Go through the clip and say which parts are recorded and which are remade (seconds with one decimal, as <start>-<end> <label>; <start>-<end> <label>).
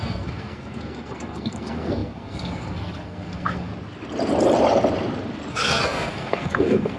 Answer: 0.0-3.7 remade; 3.7-5.5 recorded; 5.5-7.0 remade